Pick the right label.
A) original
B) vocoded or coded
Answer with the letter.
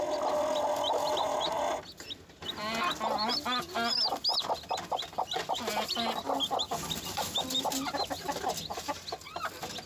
A